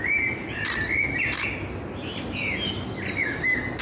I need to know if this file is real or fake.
real